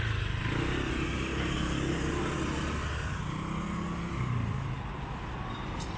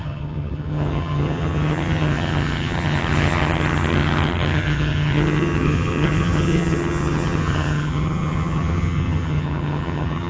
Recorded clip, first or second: first